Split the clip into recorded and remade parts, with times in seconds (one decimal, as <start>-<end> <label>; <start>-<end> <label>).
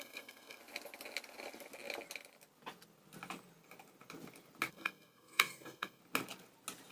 0.0-0.6 remade; 0.6-4.7 recorded; 4.7-6.0 remade; 6.0-6.9 recorded